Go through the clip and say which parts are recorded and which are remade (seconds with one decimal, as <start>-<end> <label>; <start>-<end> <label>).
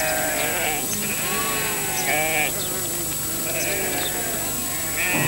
0.0-5.3 recorded